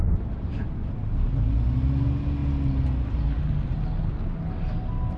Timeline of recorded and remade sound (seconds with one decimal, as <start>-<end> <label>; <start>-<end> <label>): 0.0-5.2 recorded